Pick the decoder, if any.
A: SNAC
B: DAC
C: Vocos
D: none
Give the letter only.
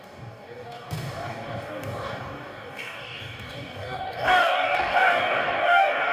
B